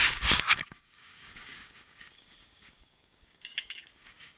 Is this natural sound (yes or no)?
no